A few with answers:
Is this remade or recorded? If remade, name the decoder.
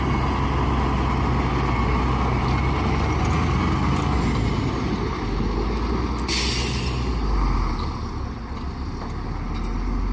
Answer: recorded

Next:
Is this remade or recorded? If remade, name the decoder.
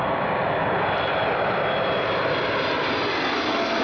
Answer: recorded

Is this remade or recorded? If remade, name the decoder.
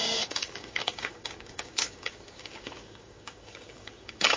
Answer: remade, codec, DAC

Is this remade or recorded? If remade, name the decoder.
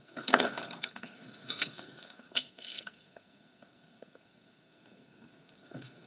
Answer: remade, codec, SNAC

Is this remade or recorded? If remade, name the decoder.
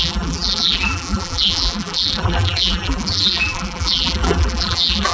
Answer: remade, vocoder, BigVGAN v2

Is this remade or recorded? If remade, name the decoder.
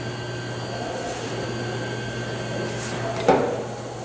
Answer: recorded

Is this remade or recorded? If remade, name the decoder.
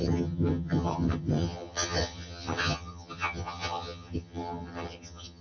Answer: remade, vocoder, HiFi-GAN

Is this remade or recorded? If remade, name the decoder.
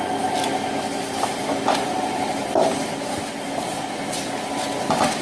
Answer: recorded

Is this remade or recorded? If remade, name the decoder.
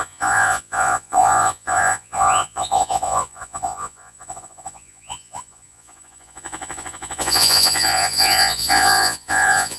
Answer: remade, vocoder, Vocos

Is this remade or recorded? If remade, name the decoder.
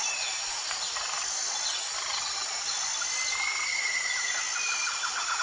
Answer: recorded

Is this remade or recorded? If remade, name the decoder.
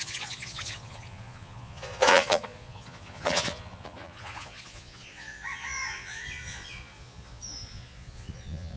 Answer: remade, vocoder, Vocos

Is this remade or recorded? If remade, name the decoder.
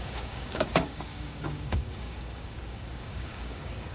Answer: remade, codec, DAC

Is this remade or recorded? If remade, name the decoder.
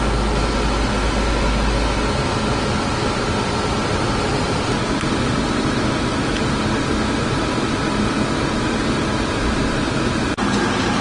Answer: recorded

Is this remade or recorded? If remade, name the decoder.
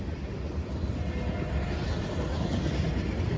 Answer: recorded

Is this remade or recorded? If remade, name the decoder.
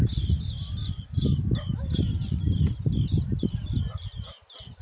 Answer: recorded